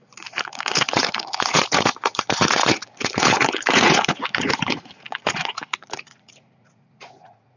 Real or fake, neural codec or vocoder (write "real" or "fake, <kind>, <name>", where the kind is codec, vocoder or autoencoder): fake, vocoder, Vocos